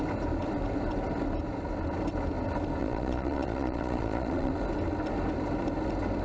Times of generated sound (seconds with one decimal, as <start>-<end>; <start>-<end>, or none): 2.8-4.5